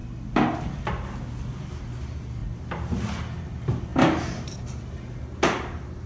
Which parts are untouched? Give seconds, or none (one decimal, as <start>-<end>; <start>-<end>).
0.0-3.9; 5.0-6.1